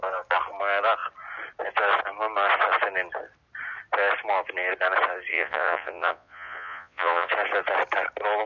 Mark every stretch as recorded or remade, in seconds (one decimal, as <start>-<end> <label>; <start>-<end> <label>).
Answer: 0.0-5.3 recorded; 5.3-7.3 remade; 7.3-8.5 recorded